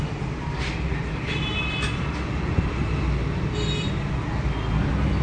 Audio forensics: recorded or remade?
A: recorded